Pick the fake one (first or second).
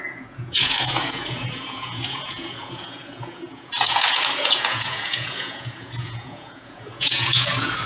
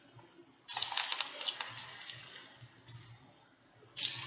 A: first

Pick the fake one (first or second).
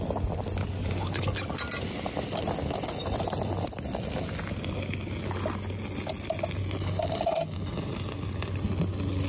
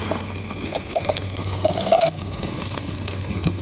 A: second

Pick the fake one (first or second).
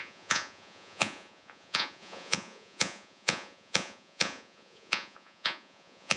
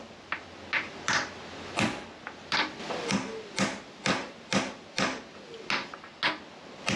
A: first